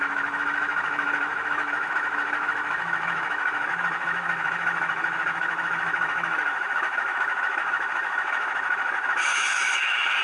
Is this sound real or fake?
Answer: fake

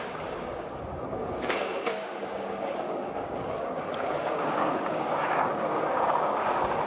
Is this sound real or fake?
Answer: fake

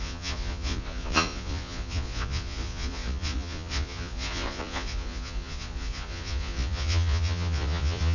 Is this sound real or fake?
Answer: fake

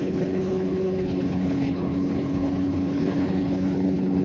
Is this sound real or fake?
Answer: fake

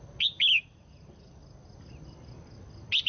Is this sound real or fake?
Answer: real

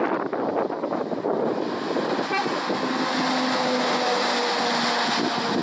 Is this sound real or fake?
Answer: real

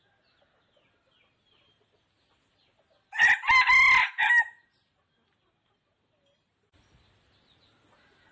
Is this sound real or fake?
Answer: real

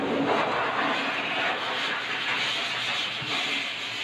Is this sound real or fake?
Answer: real